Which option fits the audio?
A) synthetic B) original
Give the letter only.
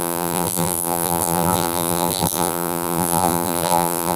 A